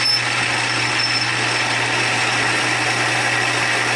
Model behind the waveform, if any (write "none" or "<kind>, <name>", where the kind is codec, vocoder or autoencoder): none